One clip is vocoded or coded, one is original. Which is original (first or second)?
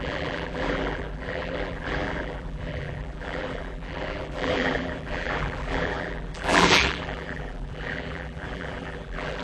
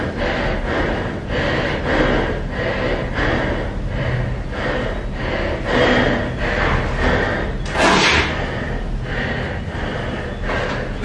second